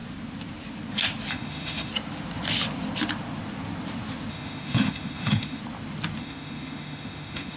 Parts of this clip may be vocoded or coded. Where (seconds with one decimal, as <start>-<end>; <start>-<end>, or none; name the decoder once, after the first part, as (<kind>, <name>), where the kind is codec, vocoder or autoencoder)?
1.3-1.9 (autoencoder, DAC-VAE); 4.3-5.6; 6.2-7.6